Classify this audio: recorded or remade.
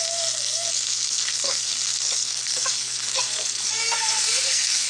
remade